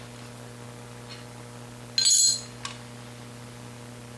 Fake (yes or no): no